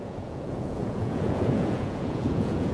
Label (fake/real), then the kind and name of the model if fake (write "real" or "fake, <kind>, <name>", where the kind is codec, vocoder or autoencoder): fake, vocoder, Vocos